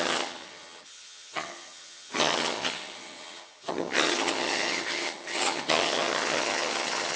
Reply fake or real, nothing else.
fake